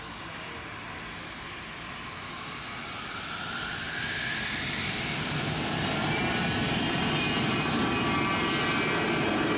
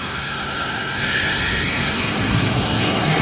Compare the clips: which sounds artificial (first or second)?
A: second